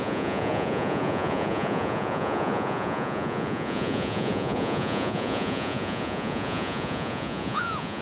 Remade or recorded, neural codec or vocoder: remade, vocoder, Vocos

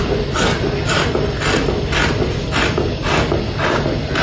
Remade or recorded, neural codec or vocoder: recorded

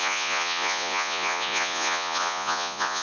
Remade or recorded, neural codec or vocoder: remade, vocoder, Vocos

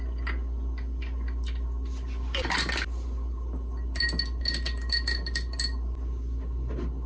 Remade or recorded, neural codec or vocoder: recorded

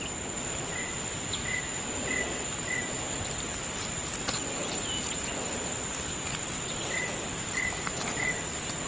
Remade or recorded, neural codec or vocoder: recorded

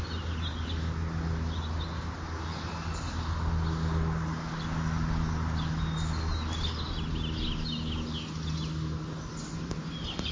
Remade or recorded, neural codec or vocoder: recorded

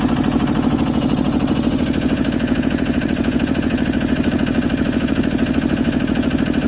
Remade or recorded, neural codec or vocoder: remade, vocoder, Vocos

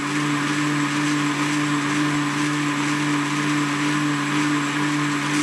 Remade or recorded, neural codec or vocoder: recorded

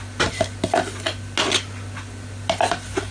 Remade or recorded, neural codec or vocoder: recorded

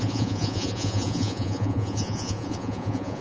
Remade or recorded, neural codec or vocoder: remade, vocoder, Vocos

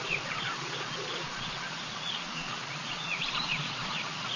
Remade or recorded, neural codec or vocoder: remade, vocoder, Vocos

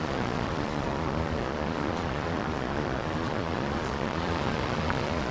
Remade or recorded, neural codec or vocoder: remade, vocoder, Vocos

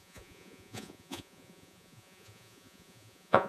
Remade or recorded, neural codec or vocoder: remade, vocoder, Vocos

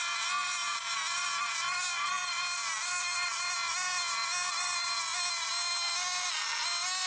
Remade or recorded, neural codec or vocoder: recorded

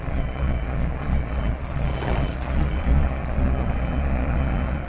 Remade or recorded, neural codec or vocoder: remade, vocoder, Vocos